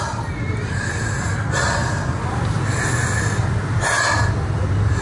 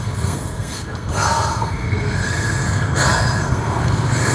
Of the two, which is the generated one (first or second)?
second